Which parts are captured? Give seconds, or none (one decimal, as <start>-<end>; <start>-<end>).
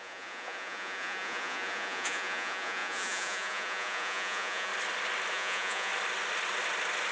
4.7-5.3; 5.9-7.1